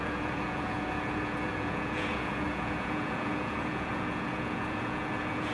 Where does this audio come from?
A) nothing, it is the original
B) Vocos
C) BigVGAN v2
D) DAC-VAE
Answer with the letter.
B